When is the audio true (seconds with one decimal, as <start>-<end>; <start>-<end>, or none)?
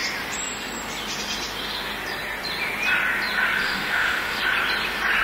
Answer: 0.0-3.6; 4.4-5.2